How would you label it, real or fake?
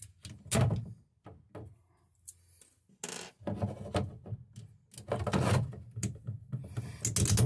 real